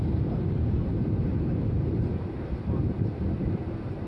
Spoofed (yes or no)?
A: yes